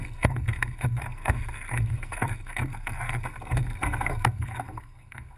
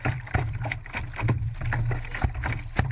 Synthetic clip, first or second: first